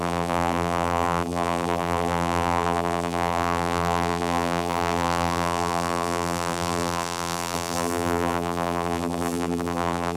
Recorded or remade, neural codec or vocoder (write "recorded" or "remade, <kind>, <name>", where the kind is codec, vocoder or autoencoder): remade, vocoder, BigVGAN v2